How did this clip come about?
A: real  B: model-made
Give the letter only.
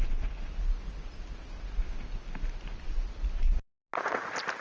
A